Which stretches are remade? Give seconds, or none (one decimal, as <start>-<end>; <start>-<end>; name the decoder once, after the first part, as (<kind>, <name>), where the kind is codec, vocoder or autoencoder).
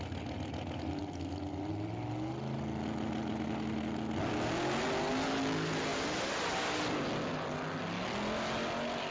none